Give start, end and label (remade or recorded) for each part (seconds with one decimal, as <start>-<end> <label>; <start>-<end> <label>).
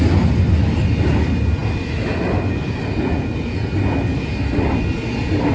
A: 0.0-5.5 recorded